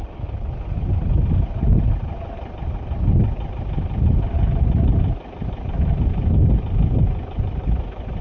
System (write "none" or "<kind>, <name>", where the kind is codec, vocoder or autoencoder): none